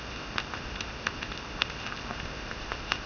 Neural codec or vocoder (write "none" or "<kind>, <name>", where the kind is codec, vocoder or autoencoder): codec, ZipCodec